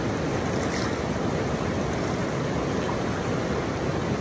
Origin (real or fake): real